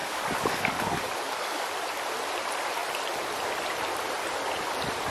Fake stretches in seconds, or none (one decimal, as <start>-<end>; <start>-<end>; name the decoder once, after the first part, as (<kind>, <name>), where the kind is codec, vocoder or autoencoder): 0.0-1.7 (codec, DAC)